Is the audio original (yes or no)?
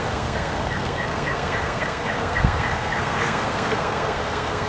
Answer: no